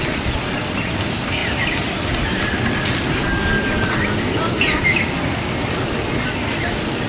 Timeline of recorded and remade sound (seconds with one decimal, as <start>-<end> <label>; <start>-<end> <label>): 0.0-7.1 recorded